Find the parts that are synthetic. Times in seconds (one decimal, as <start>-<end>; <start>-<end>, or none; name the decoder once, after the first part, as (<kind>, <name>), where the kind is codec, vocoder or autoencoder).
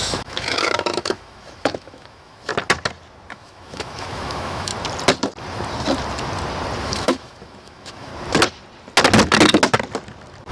0.0-2.5 (autoencoder, DAC-VAE); 3.3-4.7; 6.8-8.1